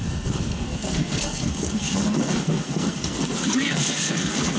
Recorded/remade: remade